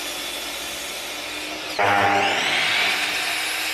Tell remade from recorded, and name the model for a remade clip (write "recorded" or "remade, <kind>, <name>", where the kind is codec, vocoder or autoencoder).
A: recorded